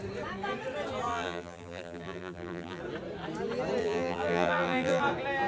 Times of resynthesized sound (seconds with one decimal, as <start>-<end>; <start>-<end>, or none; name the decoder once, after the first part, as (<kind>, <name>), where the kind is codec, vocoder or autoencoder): 1.1-2.8 (vocoder, BigVGAN v2); 3.8-5.0